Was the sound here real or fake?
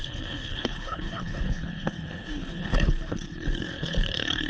fake